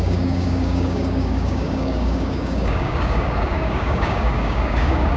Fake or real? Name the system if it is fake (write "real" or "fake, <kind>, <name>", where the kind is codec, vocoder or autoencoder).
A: fake, codec, DAC